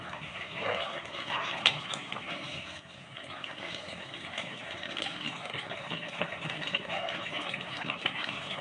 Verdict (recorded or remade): remade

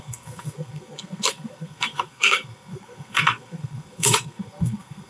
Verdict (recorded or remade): remade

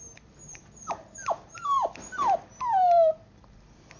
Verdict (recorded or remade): recorded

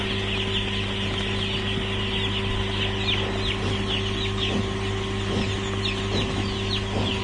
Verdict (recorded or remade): recorded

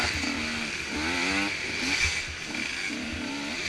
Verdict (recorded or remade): recorded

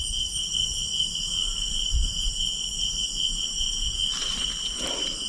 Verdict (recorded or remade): recorded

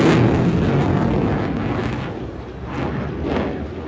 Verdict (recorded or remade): recorded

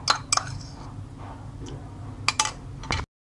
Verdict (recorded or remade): recorded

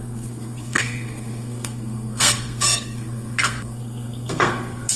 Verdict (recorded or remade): remade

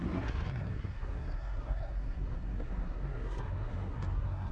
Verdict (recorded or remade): remade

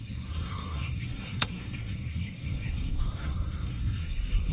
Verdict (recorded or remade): remade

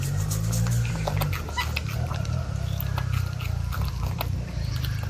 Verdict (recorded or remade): recorded